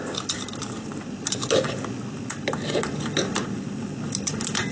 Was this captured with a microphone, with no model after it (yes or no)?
yes